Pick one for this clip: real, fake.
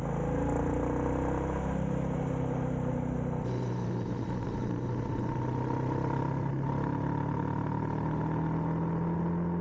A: real